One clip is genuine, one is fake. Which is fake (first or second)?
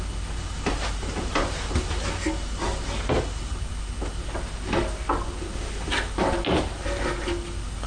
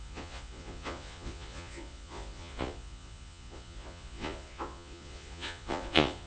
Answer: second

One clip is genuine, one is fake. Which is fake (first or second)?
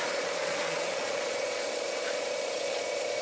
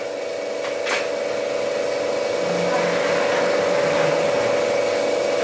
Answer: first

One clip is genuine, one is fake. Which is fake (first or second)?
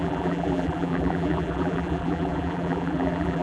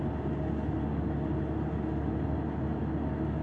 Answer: first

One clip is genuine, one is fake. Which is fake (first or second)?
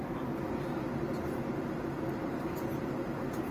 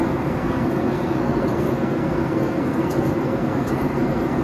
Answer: second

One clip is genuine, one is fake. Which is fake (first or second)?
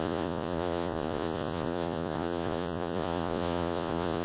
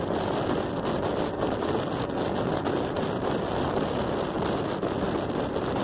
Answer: first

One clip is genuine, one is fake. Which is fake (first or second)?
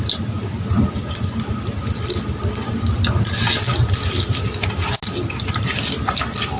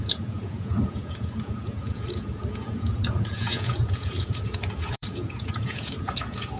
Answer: second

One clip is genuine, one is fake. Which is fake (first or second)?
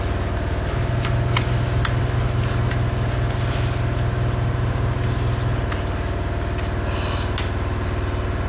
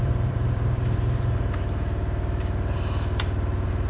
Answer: second